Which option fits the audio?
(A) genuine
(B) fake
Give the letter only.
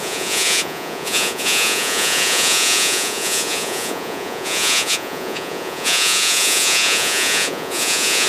B